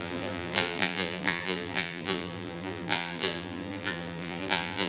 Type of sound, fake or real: fake